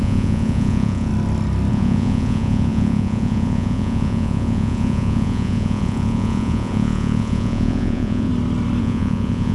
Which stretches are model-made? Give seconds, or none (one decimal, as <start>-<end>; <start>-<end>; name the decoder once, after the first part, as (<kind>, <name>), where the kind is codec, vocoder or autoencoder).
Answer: 0.0-1.1 (vocoder, Vocos); 1.7-8.3; 8.8-9.5